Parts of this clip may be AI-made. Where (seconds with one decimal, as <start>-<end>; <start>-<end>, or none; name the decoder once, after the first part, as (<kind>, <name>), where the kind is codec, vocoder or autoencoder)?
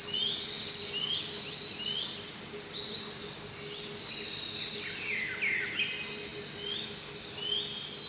none